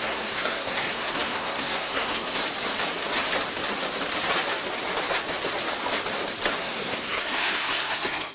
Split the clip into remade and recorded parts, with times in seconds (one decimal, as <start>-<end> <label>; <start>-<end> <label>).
0.0-2.4 remade; 2.4-6.6 recorded; 6.6-8.3 remade